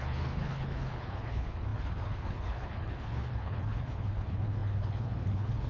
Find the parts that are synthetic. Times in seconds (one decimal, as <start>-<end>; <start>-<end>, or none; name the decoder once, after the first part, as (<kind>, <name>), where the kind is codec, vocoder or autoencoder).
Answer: 0.0-5.7 (codec, HILCodec)